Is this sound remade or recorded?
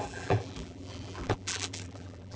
remade